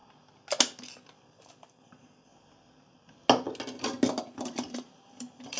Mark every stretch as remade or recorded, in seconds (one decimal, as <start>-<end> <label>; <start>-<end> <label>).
0.0-1.2 recorded; 1.2-2.3 remade; 2.3-4.2 recorded; 4.2-5.6 remade